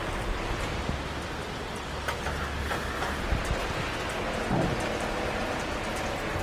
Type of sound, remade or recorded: recorded